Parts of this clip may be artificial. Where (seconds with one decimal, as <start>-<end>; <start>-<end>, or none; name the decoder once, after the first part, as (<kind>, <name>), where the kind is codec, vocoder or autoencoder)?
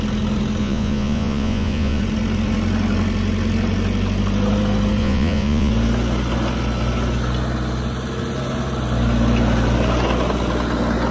0.6-2.0 (vocoder, Vocos); 5.0-5.7